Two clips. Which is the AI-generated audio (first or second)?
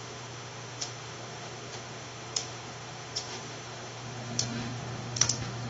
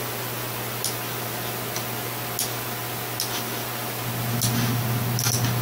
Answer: first